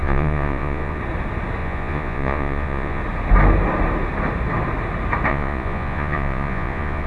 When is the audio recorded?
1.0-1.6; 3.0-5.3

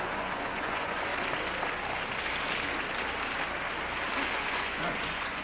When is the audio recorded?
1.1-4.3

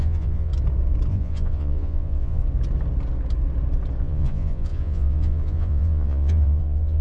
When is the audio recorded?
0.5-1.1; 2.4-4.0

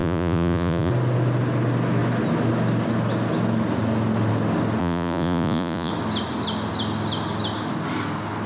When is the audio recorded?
0.9-4.8; 5.9-8.5